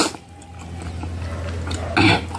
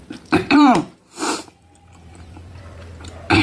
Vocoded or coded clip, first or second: second